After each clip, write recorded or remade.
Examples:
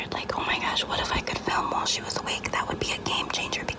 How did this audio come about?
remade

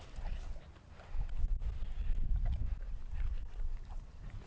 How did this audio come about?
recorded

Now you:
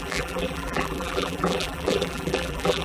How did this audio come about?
remade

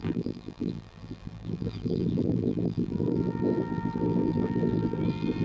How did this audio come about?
remade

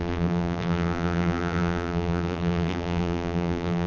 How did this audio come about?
remade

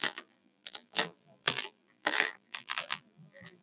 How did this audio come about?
remade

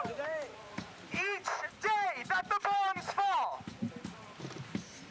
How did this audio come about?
remade